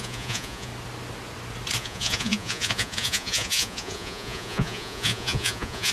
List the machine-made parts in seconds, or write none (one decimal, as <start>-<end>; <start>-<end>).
0.0-0.7; 1.8-5.9

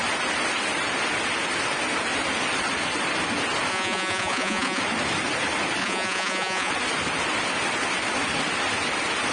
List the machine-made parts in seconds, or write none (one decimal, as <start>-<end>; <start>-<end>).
3.7-4.8; 5.8-6.7

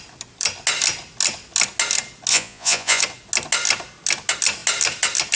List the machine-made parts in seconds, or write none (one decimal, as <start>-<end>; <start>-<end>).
2.3-3.0

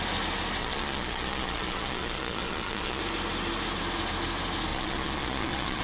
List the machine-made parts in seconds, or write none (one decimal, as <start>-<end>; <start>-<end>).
0.6-3.0; 4.7-5.8

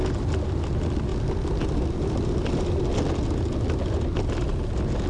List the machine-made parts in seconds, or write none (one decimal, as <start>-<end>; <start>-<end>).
none

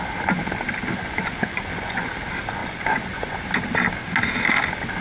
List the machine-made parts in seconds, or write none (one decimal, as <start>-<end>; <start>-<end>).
1.0-2.1; 2.6-3.4